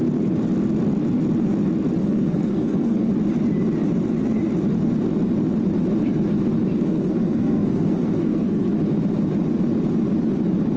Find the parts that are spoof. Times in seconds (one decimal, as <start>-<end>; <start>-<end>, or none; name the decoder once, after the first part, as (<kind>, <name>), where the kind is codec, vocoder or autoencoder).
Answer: 2.0-3.1 (codec, SNAC); 6.7-8.7